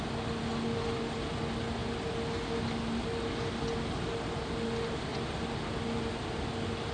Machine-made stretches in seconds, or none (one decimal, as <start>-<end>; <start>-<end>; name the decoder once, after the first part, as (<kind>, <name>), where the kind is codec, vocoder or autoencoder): none